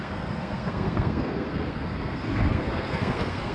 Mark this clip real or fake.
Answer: fake